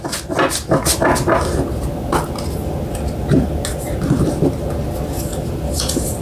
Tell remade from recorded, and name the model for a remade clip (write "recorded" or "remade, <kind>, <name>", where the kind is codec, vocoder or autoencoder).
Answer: recorded